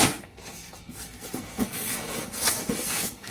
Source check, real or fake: fake